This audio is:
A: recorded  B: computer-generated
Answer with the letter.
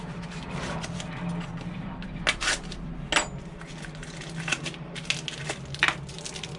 A